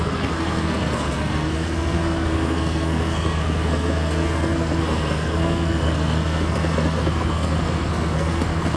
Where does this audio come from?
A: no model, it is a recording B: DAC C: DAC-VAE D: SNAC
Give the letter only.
D